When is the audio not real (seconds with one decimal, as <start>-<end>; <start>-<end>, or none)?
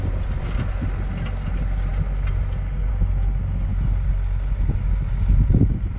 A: none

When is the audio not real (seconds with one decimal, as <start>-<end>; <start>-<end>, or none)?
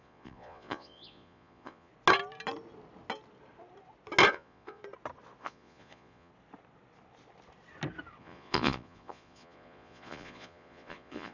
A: 0.0-1.9; 4.3-4.8; 5.4-6.3; 8.2-11.3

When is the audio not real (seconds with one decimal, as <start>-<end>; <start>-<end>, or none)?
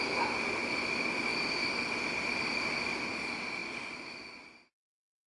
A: 3.6-4.1